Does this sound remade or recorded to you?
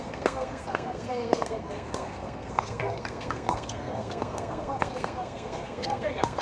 remade